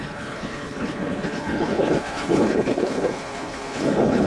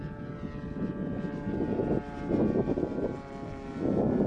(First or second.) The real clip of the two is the second